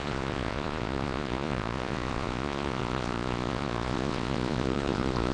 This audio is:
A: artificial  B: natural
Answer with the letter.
A